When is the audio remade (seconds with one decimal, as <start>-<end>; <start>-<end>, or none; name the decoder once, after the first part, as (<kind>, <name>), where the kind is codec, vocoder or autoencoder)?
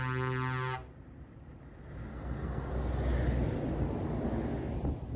2.1-2.7 (codec, SNAC)